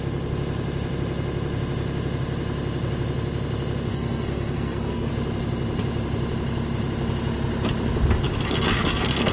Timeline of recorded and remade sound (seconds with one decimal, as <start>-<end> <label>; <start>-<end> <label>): 0.0-3.9 recorded; 3.9-5.1 remade; 5.1-9.3 recorded